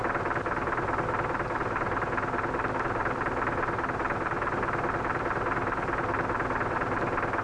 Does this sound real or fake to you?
real